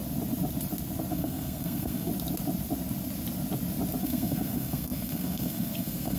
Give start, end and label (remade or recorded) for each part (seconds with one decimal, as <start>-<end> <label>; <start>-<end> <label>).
0.0-1.1 recorded; 1.1-2.1 remade; 2.1-4.0 recorded; 4.0-6.2 remade